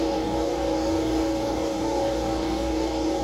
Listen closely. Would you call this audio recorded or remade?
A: remade